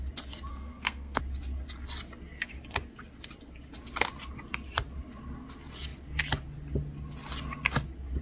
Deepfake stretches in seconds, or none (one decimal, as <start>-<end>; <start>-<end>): 0.5-1.2